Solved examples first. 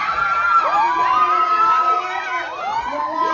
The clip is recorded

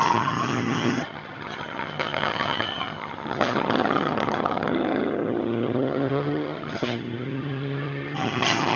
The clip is remade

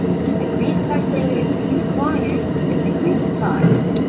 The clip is recorded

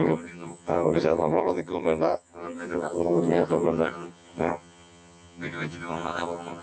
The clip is remade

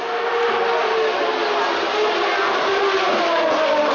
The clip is recorded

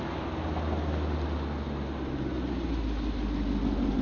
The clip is recorded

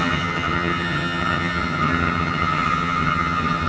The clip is remade